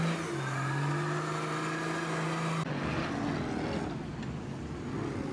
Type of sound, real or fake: real